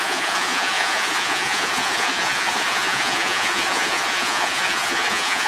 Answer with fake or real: fake